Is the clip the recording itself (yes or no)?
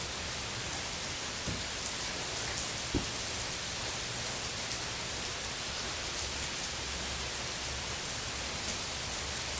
no